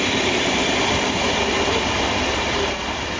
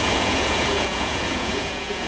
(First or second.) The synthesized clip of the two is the second